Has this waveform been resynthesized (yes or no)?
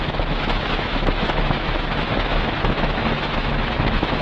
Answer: yes